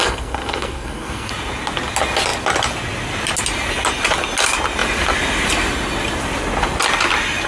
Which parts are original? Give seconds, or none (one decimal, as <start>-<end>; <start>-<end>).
1.3-7.5

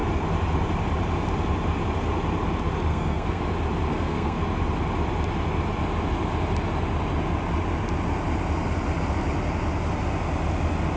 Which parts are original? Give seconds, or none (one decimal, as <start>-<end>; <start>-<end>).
0.0-2.9; 3.4-3.9; 4.4-11.0

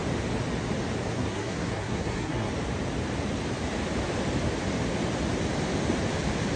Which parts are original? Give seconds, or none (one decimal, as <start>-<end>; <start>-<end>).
0.0-1.1; 2.5-6.6

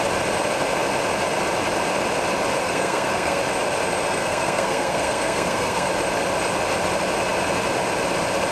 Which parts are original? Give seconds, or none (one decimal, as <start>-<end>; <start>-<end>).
0.0-2.6; 3.4-4.1; 5.9-8.5

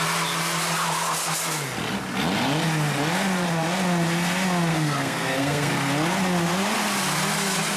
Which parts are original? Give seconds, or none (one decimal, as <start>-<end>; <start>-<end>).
0.0-4.7; 5.7-7.8

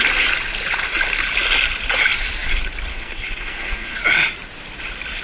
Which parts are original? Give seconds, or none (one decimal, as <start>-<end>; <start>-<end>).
0.0-2.9; 4.0-5.2

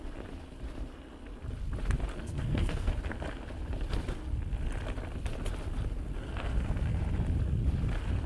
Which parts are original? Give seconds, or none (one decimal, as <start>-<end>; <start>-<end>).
0.0-2.1; 2.9-6.2; 7.0-8.3